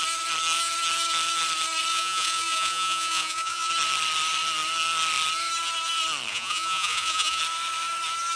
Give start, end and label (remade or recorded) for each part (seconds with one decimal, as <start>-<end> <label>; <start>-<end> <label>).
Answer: 0.0-1.9 recorded; 1.9-3.7 remade; 3.7-6.3 recorded; 6.3-7.4 remade; 7.4-8.4 recorded